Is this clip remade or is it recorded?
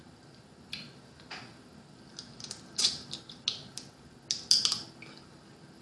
recorded